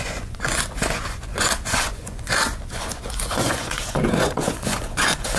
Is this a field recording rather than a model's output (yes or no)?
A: no